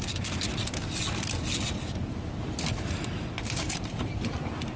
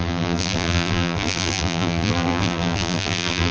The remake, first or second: second